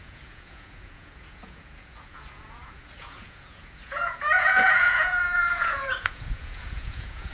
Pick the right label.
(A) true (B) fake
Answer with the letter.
B